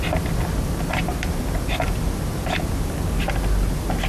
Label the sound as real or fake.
real